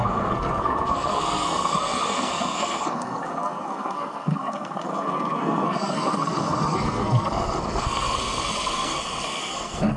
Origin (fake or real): fake